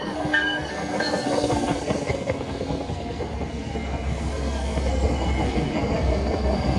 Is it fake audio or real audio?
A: fake